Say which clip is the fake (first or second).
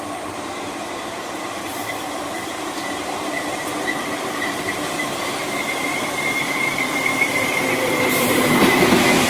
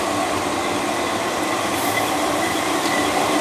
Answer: first